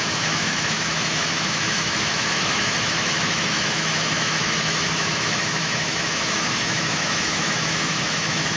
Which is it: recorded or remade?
remade